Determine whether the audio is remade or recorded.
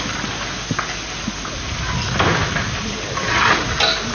recorded